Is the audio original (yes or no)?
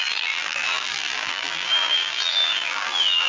no